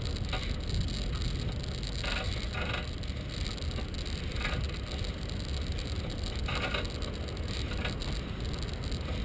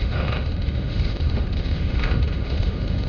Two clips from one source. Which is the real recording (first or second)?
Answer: first